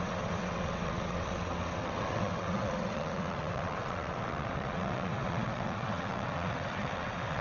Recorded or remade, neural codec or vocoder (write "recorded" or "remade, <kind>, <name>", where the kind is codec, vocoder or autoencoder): remade, vocoder, WaveNeXt